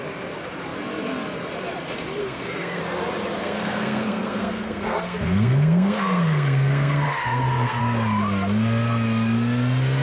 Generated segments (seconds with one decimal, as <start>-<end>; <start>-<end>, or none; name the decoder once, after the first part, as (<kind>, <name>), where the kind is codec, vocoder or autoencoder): 2.2-2.8 (codec, SNAC); 3.4-7.8